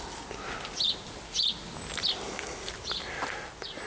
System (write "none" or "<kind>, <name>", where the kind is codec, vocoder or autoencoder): none